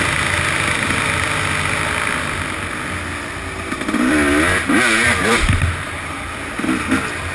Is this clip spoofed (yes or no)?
no